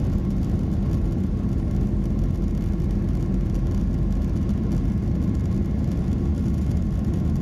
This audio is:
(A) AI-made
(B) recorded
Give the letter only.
B